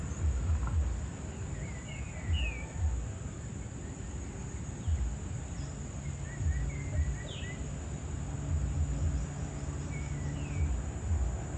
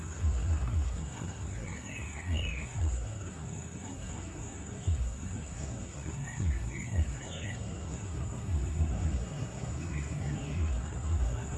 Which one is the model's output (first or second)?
second